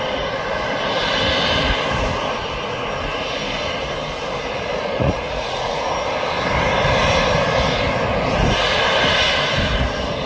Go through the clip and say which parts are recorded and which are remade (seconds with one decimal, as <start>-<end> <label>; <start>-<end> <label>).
0.0-4.7 recorded; 4.7-5.8 remade; 5.8-10.3 recorded

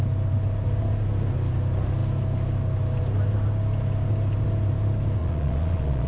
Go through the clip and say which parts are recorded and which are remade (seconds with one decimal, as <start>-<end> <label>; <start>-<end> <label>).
0.0-5.2 recorded; 5.2-6.1 remade

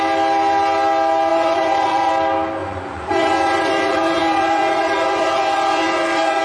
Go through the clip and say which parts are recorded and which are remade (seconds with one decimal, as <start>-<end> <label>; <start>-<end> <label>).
0.0-1.3 recorded; 1.3-2.1 remade; 2.1-2.6 recorded; 2.6-6.4 remade

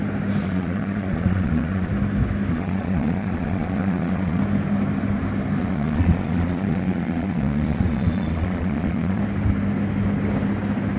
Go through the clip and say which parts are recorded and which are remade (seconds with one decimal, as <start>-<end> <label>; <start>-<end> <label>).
0.0-0.4 recorded; 0.4-1.9 remade; 1.9-2.5 recorded; 2.5-4.4 remade; 4.4-5.6 recorded; 5.6-9.2 remade; 9.2-11.0 recorded

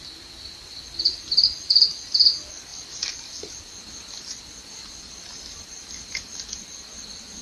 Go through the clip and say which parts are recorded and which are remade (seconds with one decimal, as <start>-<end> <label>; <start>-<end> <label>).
0.0-7.4 recorded

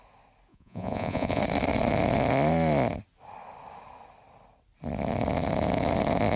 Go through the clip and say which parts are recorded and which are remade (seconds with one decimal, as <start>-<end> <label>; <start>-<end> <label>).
0.0-0.5 recorded; 0.5-1.4 remade; 1.4-6.4 recorded